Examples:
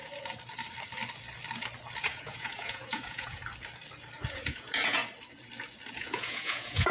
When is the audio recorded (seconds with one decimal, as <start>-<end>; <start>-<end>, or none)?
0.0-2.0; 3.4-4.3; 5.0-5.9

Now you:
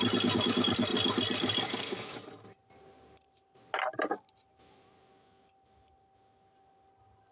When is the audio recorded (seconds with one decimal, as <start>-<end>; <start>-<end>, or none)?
0.0-7.3

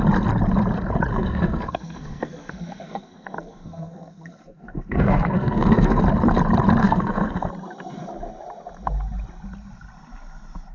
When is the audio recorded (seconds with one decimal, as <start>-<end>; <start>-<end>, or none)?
0.0-1.1; 6.0-6.8; 7.5-10.7